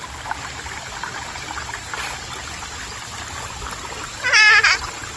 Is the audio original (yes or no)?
yes